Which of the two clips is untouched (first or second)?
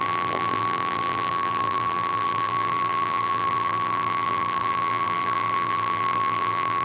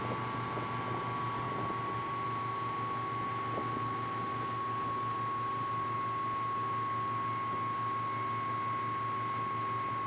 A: second